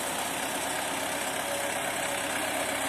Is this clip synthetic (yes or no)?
no